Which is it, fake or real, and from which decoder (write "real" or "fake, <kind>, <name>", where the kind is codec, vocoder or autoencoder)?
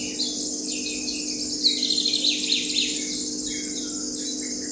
real